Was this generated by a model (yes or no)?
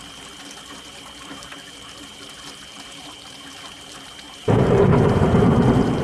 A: yes